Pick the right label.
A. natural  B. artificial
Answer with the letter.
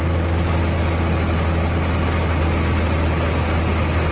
A